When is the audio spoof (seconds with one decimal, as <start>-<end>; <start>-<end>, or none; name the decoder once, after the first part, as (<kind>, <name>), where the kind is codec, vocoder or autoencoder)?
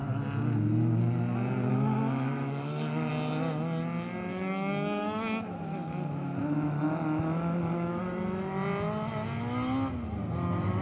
1.7-3.1 (autoencoder, DAC-VAE); 4.3-8.0